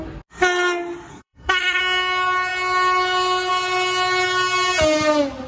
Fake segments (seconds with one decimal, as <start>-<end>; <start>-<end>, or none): 1.1-1.8